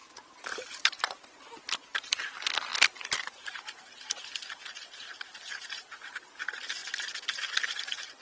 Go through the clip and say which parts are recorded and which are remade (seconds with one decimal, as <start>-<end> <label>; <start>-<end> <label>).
0.0-1.5 remade; 1.5-2.7 recorded; 2.7-4.7 remade; 4.7-5.3 recorded; 5.3-6.3 remade; 6.3-6.8 recorded; 6.8-7.7 remade; 7.7-8.2 recorded